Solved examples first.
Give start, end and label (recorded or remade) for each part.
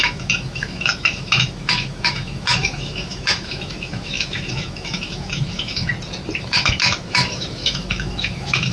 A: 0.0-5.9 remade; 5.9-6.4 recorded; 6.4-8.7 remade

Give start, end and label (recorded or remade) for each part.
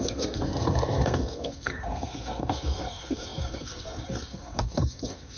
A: 0.0-5.4 remade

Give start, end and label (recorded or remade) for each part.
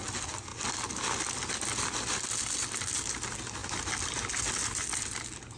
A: 0.0-5.6 recorded